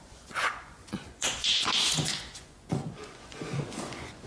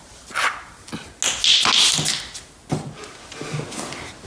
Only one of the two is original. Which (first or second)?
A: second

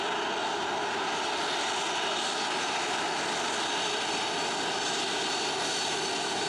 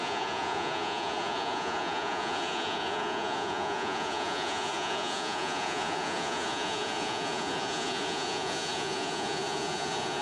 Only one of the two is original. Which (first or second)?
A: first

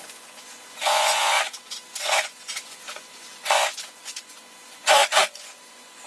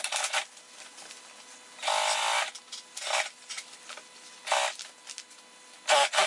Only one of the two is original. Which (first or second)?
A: second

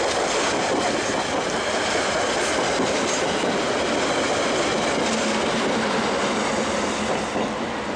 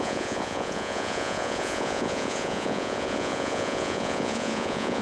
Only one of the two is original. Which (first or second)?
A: first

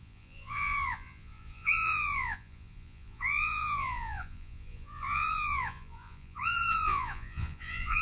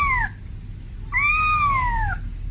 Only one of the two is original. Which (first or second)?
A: second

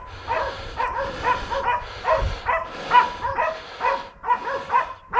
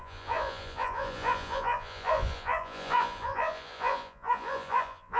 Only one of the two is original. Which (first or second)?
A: first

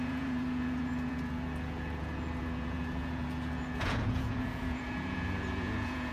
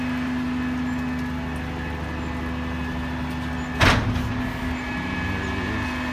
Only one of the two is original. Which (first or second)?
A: second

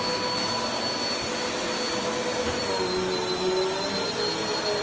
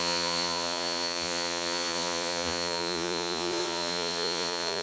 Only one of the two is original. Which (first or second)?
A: first